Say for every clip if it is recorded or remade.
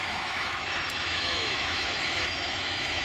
remade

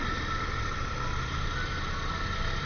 recorded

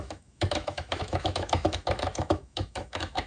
remade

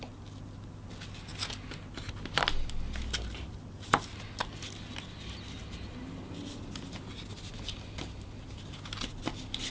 recorded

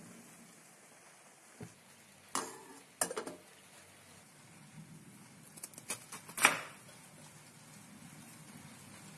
recorded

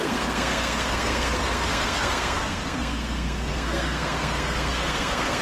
remade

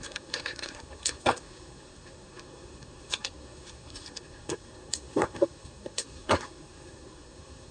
remade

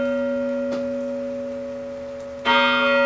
recorded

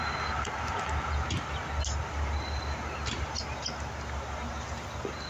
recorded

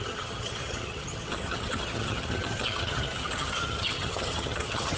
remade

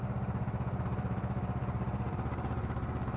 remade